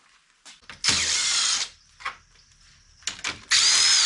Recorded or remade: recorded